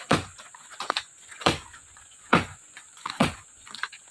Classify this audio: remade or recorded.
remade